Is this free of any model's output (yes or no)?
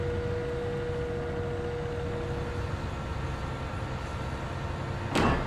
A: yes